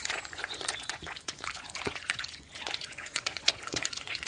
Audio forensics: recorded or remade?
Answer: remade